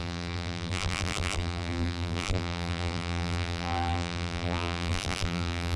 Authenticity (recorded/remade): remade